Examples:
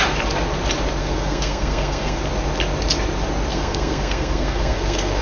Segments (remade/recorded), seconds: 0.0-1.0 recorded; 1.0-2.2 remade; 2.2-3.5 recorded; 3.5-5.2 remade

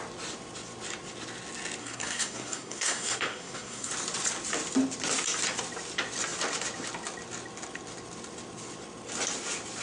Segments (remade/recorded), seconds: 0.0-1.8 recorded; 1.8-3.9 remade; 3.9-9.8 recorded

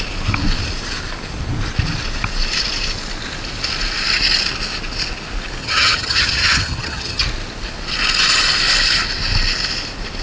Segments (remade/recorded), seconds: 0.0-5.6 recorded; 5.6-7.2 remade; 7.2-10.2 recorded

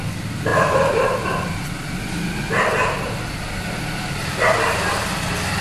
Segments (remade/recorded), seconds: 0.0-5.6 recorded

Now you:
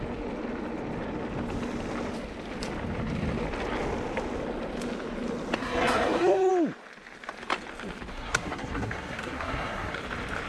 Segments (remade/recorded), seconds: 0.0-5.6 recorded; 5.6-6.5 remade; 6.5-8.1 recorded; 8.1-10.0 remade; 10.0-10.5 recorded

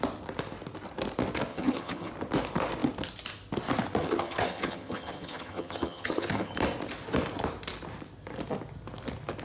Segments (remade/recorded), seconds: 0.0-1.5 recorded; 1.5-2.1 remade; 2.1-4.0 recorded; 4.0-6.5 remade; 6.5-9.4 recorded